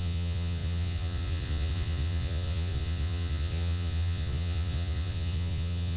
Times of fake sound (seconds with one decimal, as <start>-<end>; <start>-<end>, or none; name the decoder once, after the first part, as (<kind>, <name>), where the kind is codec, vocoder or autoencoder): 0.0-6.0 (vocoder, Vocos)